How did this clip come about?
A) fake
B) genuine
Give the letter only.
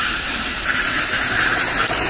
A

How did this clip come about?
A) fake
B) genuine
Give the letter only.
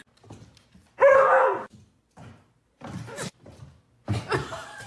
B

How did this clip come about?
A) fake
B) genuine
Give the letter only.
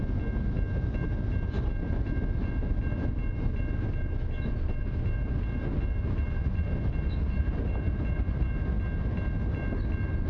B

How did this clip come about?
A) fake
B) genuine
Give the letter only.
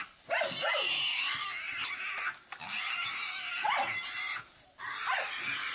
B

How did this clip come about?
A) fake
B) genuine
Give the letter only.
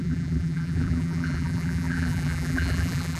A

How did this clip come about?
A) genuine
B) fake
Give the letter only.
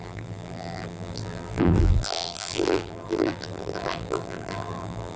B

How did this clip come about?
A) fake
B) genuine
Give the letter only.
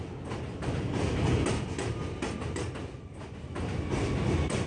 B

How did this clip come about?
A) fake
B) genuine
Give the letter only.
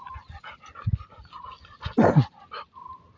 B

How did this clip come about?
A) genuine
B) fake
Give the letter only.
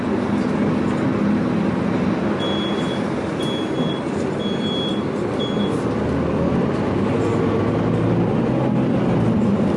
A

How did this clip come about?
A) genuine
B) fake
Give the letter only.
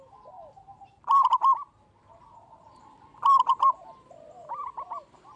B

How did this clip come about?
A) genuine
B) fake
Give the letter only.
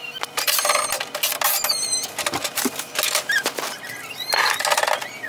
A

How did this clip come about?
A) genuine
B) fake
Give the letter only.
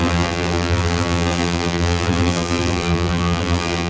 B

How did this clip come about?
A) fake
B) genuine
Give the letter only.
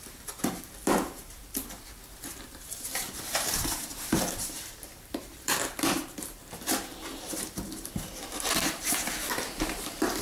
A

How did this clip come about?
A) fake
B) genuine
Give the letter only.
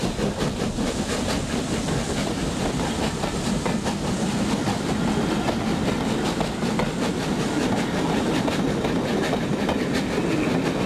B